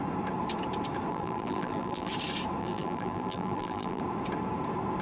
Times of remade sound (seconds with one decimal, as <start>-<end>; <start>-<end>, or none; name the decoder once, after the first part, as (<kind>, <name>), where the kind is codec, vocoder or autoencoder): 1.1-2.1 (vocoder, BigVGAN v2); 2.6-4.0